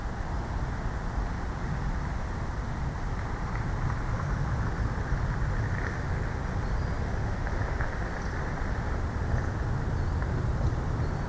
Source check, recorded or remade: recorded